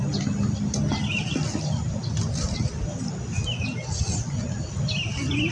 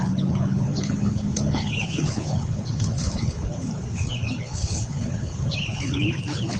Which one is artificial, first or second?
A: second